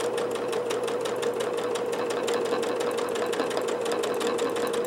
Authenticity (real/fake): real